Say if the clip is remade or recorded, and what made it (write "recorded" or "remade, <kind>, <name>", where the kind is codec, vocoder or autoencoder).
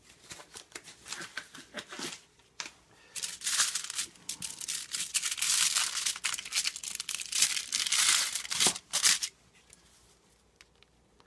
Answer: recorded